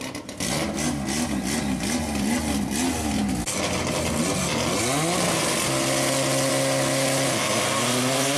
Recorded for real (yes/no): yes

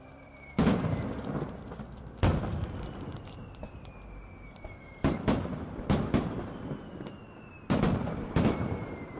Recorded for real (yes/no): no